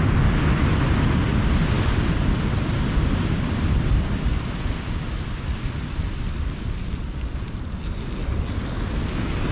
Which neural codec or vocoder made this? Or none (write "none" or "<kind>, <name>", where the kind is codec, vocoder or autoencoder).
none